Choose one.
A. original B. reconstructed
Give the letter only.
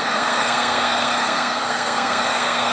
B